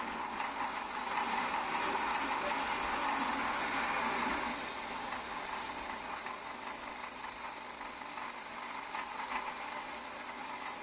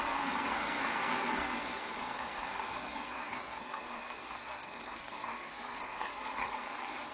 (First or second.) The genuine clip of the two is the first